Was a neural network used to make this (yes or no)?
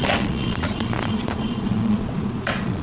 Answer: yes